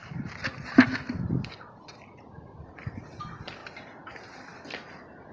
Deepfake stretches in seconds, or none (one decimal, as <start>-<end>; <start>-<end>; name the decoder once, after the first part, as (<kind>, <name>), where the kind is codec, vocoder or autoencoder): 3.6-4.1 (vocoder, BigVGAN v2)